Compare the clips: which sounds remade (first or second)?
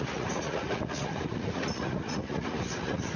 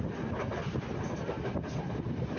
first